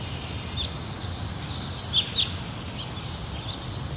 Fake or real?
real